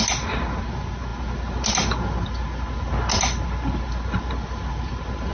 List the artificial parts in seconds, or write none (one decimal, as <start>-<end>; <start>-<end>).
none